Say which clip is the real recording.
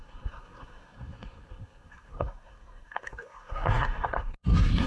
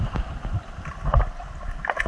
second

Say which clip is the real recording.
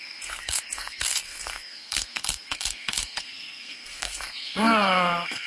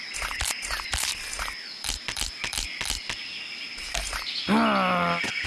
second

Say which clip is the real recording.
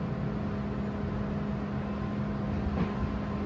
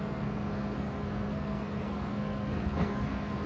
first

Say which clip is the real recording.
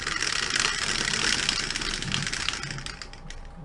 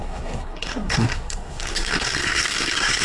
first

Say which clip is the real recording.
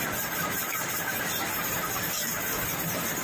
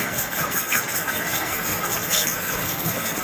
first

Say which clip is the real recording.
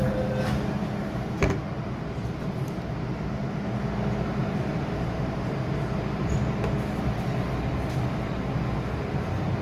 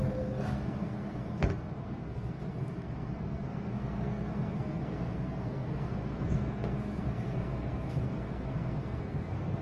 first